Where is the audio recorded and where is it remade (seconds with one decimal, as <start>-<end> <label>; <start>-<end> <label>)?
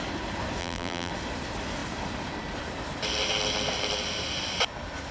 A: 0.0-0.6 recorded; 0.6-1.1 remade; 1.1-5.1 recorded